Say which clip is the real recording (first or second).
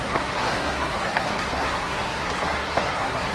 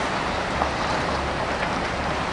second